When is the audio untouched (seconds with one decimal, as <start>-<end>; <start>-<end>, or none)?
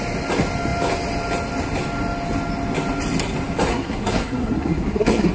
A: 0.0-3.7